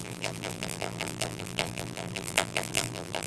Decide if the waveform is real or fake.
fake